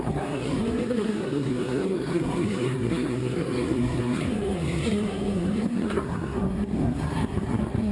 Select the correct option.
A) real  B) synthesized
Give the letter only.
B